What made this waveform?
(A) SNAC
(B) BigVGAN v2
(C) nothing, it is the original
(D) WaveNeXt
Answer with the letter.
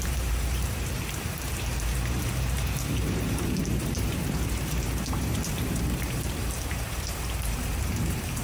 B